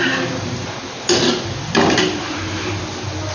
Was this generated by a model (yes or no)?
no